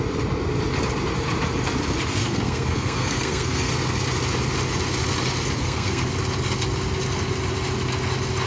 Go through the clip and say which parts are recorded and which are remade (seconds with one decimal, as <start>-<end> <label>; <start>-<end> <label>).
0.0-2.2 recorded; 2.2-3.7 remade; 3.7-5.6 recorded; 5.6-6.1 remade; 6.1-8.5 recorded